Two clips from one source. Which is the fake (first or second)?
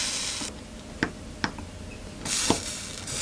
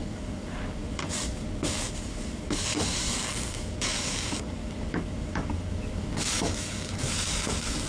second